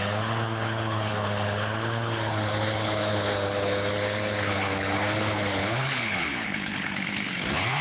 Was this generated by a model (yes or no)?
yes